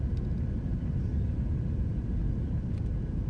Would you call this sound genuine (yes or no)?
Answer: no